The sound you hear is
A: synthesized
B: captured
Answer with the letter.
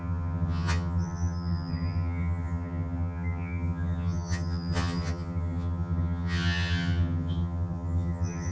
A